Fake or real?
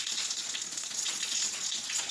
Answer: fake